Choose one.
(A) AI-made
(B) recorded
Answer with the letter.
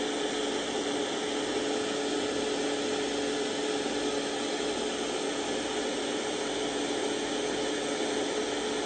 B